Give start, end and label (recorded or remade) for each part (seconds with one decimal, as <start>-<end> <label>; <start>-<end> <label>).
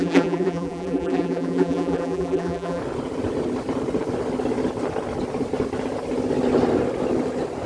0.0-2.8 remade; 2.8-7.7 recorded